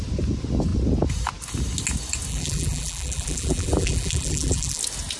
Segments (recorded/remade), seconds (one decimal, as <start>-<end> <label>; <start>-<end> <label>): 0.0-2.3 recorded; 2.3-4.8 remade; 4.8-5.2 recorded

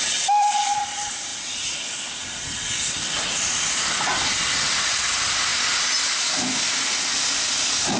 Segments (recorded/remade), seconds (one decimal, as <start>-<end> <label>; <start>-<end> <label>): 0.0-8.0 recorded